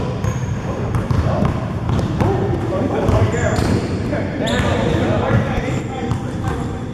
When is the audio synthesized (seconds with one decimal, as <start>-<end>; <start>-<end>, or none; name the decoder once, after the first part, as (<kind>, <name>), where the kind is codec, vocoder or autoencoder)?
0.4-4.0 (vocoder, BigVGAN v2); 4.9-5.4